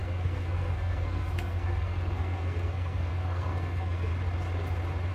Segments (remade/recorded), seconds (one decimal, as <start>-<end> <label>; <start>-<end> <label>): 0.0-4.1 remade; 4.1-5.1 recorded